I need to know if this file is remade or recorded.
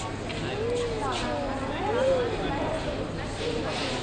recorded